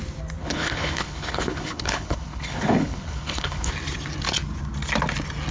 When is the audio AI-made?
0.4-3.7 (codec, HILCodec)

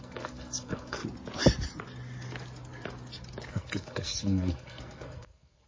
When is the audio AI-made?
0.0-1.0 (codec, SNAC); 3.5-5.7

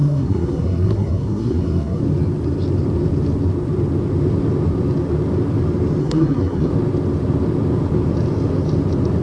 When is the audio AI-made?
0.0-2.0 (codec, SNAC); 6.0-6.7

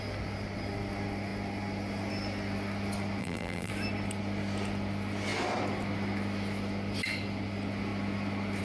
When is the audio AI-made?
3.2-3.7 (vocoder, BigVGAN v2)

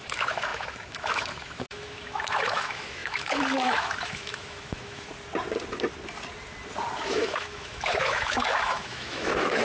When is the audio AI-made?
0.0-5.1 (autoencoder, DAC-VAE); 7.0-9.6

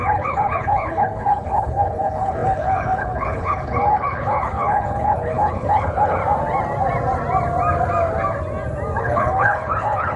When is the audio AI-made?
0.0-6.2 (codec, HILCodec); 9.0-10.2

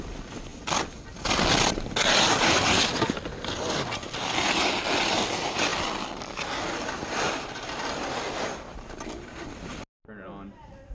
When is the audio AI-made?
none